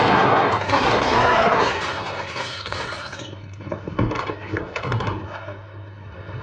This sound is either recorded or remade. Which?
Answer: remade